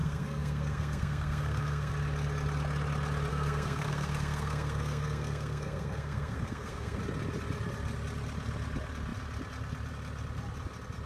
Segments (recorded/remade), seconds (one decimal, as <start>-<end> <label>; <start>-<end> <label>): 0.0-1.9 remade; 1.9-3.3 recorded; 3.3-7.0 remade; 7.0-11.1 recorded